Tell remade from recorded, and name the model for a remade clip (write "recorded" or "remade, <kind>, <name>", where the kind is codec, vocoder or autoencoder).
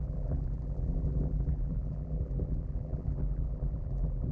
remade, vocoder, BigVGAN v2